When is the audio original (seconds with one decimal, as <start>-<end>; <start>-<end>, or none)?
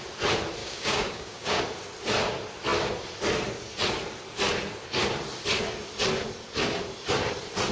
0.0-0.6; 1.6-7.7